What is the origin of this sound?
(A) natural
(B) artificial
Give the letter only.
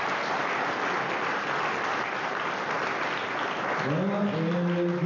A